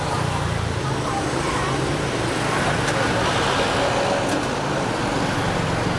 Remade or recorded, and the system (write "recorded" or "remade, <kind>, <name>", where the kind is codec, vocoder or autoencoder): recorded